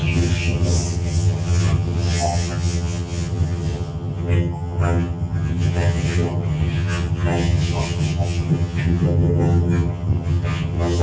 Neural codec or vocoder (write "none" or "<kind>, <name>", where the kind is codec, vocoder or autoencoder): vocoder, HiFi-GAN